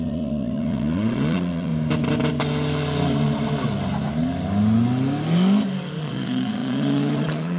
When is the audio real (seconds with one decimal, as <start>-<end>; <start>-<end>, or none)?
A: 1.7-6.0